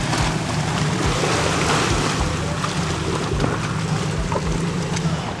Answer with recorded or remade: recorded